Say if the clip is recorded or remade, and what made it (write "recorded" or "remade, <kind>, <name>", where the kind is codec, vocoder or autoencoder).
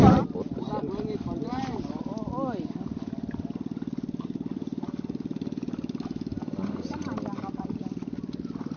recorded